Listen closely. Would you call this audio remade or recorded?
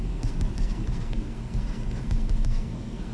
remade